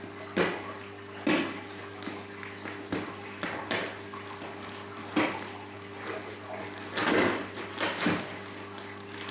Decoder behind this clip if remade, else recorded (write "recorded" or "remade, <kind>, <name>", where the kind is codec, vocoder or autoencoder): recorded